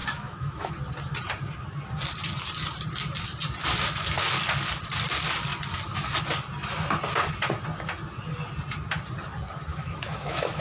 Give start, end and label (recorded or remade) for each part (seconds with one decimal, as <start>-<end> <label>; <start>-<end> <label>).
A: 0.0-0.7 remade; 0.7-9.7 recorded; 9.7-10.6 remade